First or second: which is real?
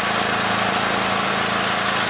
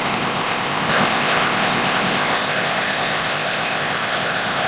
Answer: first